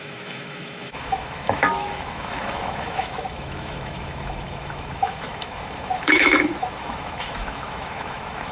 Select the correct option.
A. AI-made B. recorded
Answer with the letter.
A